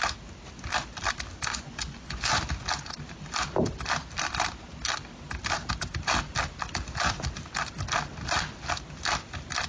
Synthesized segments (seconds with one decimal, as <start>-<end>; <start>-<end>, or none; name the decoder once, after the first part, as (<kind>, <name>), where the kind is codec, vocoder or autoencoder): 1.5-2.4 (vocoder, Vocos)